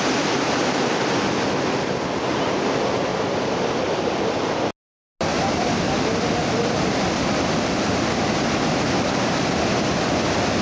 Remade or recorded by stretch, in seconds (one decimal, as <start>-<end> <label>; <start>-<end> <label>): 0.0-3.1 recorded; 3.1-4.2 remade; 4.2-5.3 recorded; 5.3-9.5 remade; 9.5-10.6 recorded